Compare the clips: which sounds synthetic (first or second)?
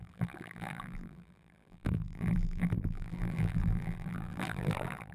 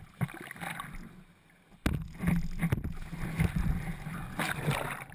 first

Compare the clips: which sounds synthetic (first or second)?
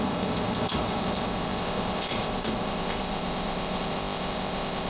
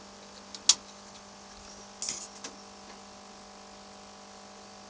first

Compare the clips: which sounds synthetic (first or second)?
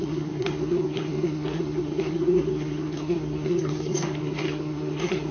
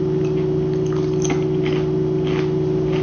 first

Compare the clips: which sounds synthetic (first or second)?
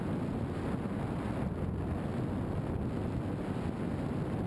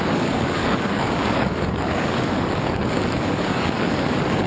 second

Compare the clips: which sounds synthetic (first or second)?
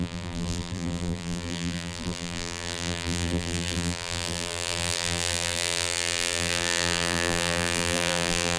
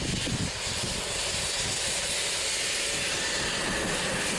first